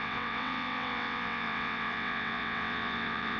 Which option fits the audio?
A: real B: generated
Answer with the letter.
B